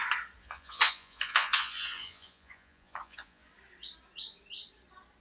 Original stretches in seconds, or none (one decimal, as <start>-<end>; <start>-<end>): 0.0-0.4; 3.5-5.2